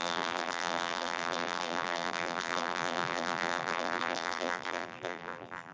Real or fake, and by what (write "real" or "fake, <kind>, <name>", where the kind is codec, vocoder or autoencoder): fake, vocoder, BigVGAN v2